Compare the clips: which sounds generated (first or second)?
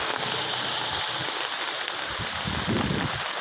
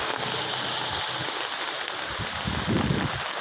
first